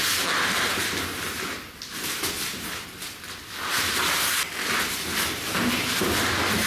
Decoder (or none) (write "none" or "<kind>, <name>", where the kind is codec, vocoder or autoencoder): none